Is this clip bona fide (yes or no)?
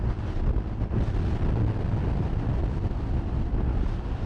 yes